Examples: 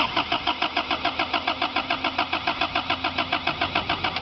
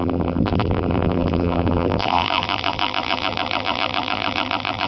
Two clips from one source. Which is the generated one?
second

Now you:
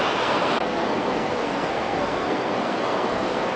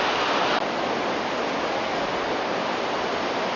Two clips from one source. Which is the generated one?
first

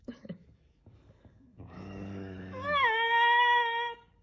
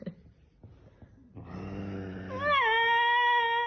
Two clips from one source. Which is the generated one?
first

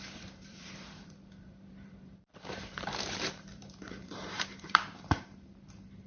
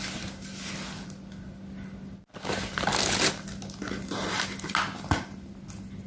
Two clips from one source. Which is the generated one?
first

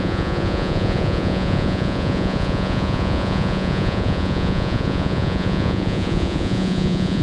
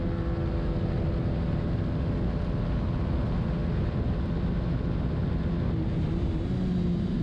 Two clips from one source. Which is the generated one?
first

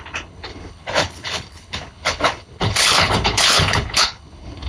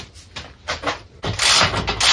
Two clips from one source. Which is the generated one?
first